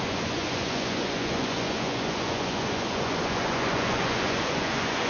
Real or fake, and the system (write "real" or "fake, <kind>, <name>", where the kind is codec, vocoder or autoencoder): fake, vocoder, Vocos